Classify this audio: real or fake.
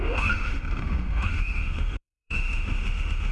fake